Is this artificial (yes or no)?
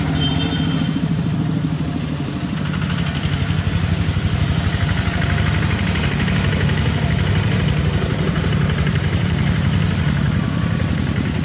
yes